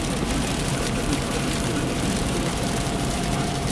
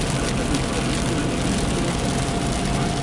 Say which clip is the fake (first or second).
first